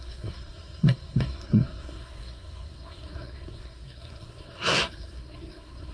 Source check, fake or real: fake